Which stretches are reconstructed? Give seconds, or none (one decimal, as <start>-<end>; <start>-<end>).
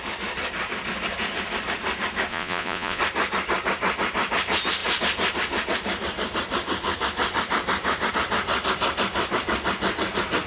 2.3-3.0